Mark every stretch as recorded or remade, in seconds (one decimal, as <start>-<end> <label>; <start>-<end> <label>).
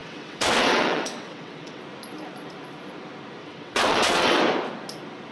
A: 0.0-1.8 remade; 1.8-3.4 recorded; 3.4-4.4 remade; 4.4-5.3 recorded